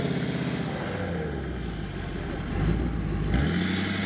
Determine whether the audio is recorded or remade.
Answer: recorded